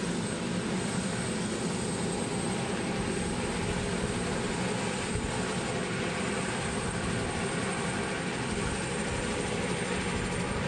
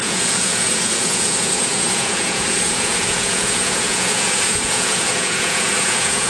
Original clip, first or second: first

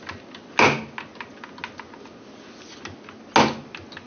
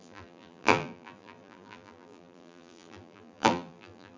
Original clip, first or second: first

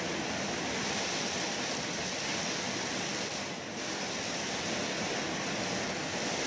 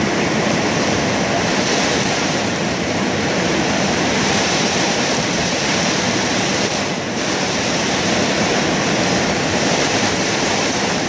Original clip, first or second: first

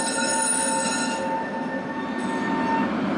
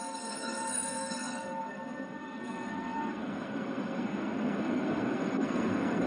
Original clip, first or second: first